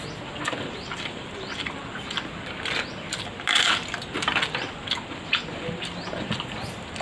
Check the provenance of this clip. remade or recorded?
remade